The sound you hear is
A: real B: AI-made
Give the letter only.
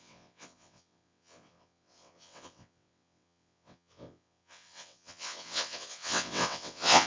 B